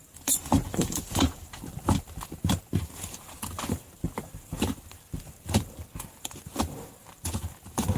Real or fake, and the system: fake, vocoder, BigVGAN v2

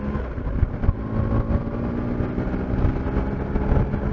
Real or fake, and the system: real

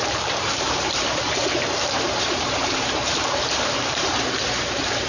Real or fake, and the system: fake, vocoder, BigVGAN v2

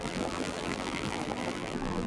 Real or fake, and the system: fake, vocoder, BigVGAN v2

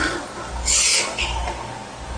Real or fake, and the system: real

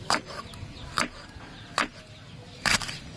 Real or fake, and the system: real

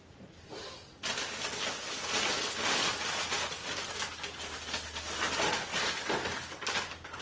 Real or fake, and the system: real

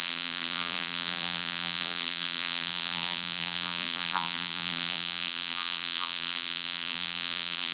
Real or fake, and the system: fake, vocoder, BigVGAN v2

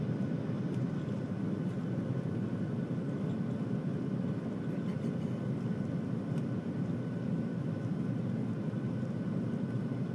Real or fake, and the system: real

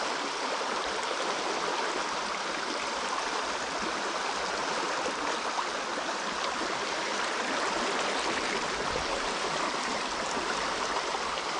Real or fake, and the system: real